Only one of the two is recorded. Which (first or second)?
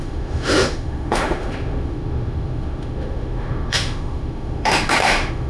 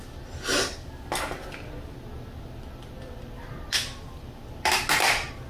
second